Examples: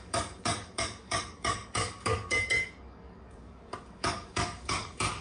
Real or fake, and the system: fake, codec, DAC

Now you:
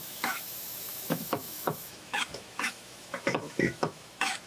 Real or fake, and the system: fake, autoencoder, DAC-VAE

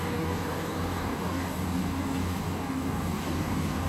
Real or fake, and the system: fake, codec, DAC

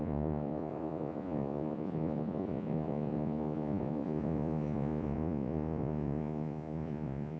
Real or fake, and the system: fake, vocoder, Vocos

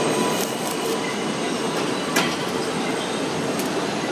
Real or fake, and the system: real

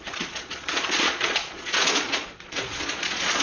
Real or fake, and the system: fake, vocoder, Vocos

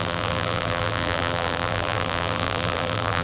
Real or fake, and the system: fake, vocoder, BigVGAN v2